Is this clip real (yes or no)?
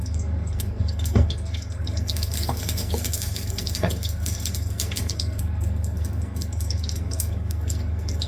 no